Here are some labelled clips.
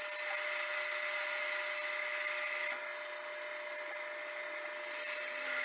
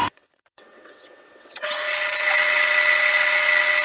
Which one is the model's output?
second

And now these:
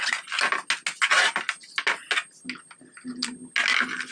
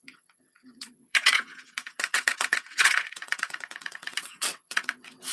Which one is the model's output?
second